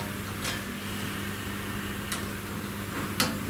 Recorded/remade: recorded